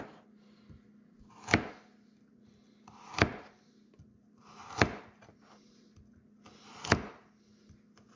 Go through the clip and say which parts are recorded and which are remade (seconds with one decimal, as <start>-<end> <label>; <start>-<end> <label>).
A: 0.0-8.2 recorded